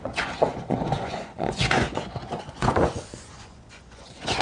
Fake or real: fake